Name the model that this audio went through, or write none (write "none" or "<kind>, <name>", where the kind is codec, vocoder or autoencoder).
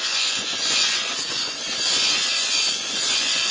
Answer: vocoder, Vocos